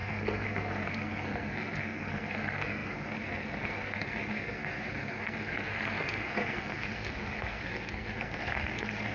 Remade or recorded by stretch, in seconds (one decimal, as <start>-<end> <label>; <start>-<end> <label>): 0.0-9.1 remade